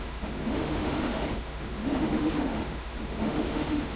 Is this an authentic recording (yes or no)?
no